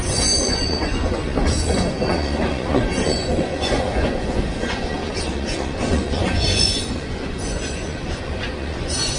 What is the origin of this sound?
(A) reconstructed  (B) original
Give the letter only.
A